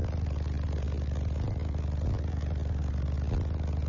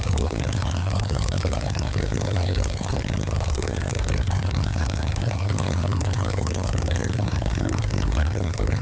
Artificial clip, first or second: second